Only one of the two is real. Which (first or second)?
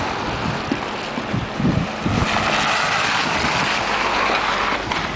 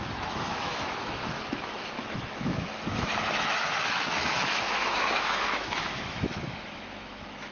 first